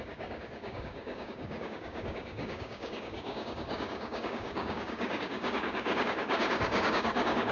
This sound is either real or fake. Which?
fake